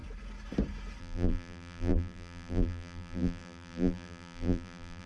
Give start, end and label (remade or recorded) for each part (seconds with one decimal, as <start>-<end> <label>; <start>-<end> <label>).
0.0-1.0 recorded; 1.0-5.1 remade